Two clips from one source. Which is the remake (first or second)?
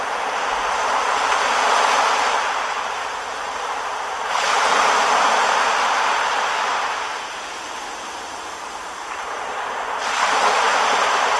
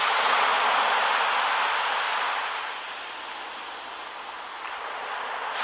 first